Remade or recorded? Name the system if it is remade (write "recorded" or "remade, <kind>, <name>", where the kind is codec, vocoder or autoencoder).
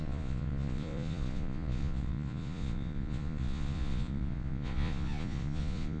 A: remade, vocoder, Vocos